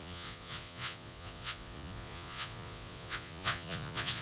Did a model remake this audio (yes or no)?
yes